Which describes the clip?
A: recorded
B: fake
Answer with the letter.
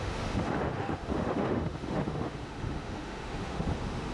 B